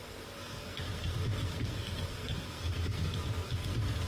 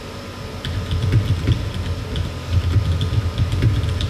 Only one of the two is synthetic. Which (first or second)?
first